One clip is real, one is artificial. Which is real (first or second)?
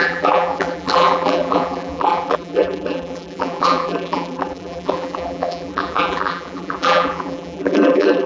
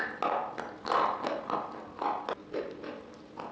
second